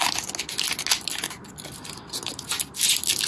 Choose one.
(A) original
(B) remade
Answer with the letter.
A